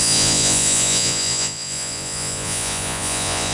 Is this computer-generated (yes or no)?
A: yes